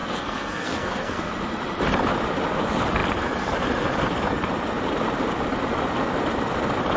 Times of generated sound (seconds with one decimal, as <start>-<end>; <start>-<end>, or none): 0.0-1.3